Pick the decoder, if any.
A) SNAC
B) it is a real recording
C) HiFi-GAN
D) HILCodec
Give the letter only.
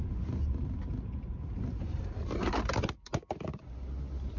B